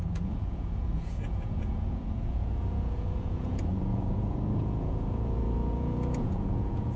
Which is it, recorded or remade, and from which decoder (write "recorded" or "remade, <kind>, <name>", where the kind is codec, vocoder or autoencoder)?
remade, vocoder, Vocos